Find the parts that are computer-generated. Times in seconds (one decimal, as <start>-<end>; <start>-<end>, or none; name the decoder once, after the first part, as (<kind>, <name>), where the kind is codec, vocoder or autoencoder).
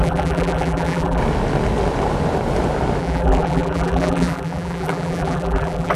0.0-1.2 (vocoder, BigVGAN v2); 3.0-6.0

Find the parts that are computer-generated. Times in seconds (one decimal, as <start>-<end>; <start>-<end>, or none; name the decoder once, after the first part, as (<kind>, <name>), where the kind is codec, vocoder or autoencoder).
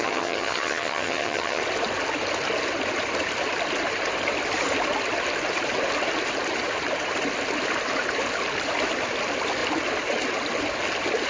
0.0-1.6 (vocoder, HiFi-GAN)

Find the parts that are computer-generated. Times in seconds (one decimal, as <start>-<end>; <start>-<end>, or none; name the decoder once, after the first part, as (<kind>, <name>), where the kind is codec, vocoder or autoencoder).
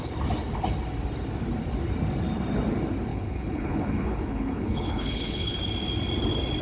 3.1-5.6 (codec, HILCodec)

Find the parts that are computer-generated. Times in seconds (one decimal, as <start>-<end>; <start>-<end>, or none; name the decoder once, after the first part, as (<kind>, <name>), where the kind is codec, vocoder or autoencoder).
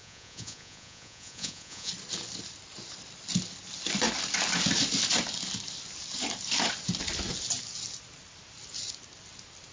0.0-1.9 (vocoder, Vocos)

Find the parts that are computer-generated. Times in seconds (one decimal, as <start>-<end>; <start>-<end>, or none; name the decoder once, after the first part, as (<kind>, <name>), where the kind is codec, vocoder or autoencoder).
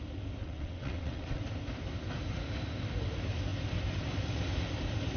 0.4-1.4 (vocoder, WaveNeXt)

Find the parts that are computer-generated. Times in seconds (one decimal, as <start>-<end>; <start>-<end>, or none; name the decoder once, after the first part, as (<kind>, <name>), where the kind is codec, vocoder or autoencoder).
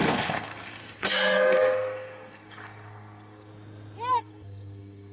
0.0-3.5 (codec, SNAC); 4.1-5.1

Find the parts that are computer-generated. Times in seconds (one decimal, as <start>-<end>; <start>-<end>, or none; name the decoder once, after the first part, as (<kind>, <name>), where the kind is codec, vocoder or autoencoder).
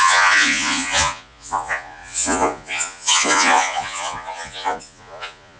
0.0-5.6 (vocoder, Vocos)